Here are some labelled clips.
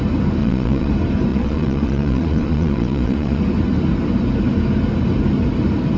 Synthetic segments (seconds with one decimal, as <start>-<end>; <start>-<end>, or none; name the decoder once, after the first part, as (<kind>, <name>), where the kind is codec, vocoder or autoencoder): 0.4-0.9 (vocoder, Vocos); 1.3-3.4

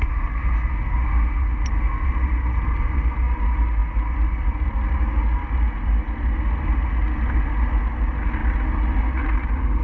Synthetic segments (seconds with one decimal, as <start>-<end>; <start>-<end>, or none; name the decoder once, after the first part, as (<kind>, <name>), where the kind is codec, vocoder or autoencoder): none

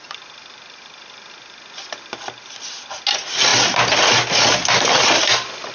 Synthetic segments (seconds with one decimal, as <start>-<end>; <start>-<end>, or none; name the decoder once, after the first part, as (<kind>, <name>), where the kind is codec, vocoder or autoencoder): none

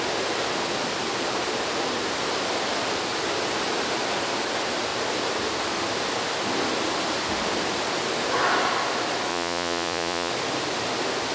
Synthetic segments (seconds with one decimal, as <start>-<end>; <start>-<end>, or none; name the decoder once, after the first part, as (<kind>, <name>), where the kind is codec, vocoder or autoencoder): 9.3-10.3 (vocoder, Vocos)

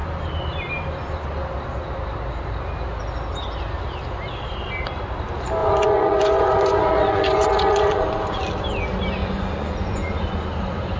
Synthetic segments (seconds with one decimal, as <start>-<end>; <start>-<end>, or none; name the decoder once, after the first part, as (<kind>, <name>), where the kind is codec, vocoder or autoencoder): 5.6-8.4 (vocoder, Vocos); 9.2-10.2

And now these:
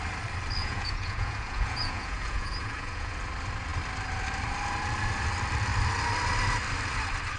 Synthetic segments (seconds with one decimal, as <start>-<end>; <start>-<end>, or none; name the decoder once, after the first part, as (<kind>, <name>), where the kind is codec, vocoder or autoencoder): 0.6-3.1 (vocoder, Vocos)

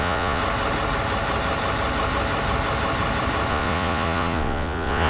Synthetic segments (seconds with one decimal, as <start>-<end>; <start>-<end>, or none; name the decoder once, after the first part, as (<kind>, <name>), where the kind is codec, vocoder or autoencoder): 0.0-0.4 (vocoder, Vocos); 3.5-5.1

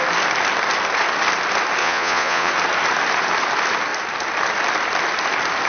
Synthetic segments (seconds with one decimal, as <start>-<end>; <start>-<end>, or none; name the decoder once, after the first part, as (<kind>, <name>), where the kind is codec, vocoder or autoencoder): 1.8-2.5 (vocoder, Vocos)